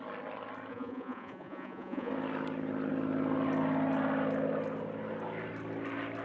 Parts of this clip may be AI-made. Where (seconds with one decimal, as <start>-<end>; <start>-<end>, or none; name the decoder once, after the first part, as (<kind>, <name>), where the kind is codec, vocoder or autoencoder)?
0.7-2.1 (vocoder, Vocos)